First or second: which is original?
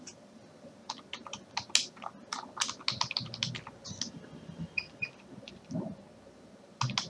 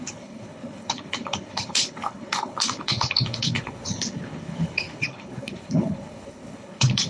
first